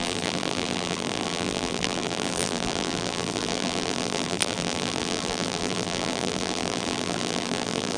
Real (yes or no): no